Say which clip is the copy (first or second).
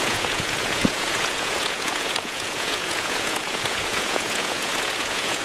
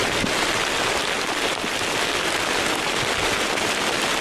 first